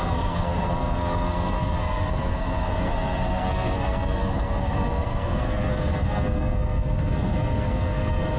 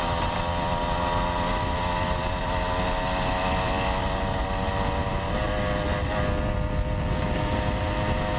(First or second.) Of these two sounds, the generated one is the first